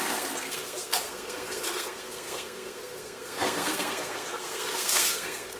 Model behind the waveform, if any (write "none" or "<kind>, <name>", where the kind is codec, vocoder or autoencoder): codec, SNAC